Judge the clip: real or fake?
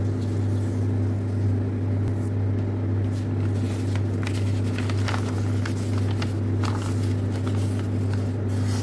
real